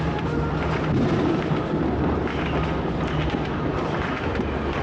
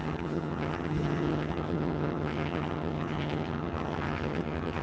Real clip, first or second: first